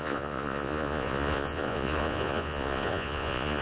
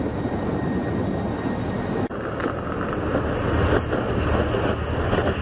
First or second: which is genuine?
second